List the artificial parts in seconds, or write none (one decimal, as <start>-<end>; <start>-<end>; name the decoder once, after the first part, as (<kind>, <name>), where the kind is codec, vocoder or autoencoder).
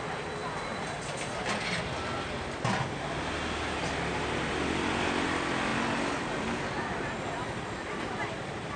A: none